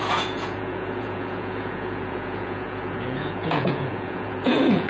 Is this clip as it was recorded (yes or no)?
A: no